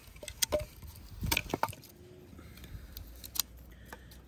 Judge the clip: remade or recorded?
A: recorded